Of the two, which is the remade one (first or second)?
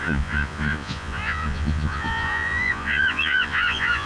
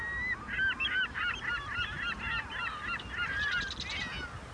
first